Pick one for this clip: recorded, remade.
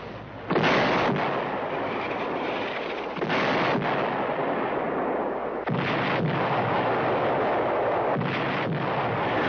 recorded